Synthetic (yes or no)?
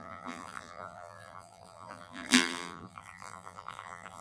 yes